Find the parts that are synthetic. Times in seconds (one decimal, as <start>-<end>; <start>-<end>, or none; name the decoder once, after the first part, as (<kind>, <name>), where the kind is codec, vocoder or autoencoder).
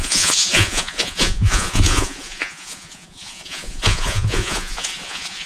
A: 0.0-5.5 (vocoder, Vocos)